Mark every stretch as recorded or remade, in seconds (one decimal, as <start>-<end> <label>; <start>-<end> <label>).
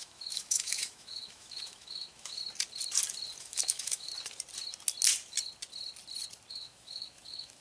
0.0-2.4 remade; 2.4-3.4 recorded; 3.4-4.1 remade; 4.1-6.5 recorded; 6.5-7.6 remade